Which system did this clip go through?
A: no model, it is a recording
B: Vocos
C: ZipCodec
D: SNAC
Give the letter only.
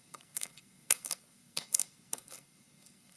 D